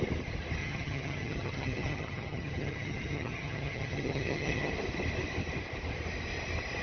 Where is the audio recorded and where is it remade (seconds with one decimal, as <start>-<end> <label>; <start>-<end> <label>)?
0.0-0.6 recorded; 0.6-4.7 remade; 4.7-6.8 recorded